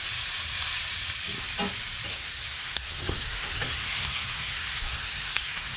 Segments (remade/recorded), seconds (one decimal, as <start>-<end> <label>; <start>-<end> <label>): 0.0-2.1 recorded; 2.1-5.8 remade